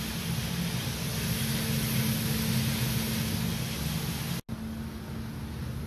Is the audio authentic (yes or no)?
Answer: yes